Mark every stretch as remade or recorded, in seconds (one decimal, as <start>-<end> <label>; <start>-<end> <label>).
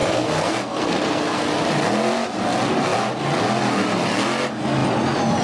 0.0-1.4 remade; 1.4-5.4 recorded